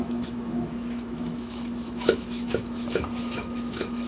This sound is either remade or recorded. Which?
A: remade